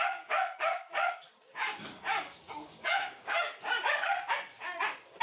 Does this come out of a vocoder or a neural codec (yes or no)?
yes